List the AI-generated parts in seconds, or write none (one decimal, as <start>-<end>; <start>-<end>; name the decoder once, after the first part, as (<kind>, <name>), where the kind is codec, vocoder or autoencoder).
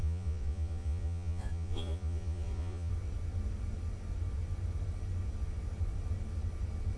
0.0-2.9 (vocoder, Vocos)